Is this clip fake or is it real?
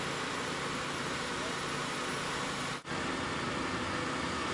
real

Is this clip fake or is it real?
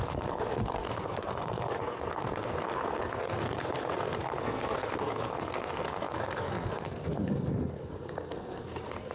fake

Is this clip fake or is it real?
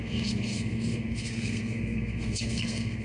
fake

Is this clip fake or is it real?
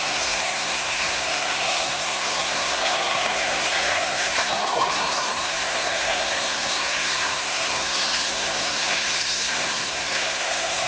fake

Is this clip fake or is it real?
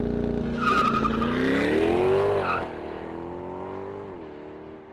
real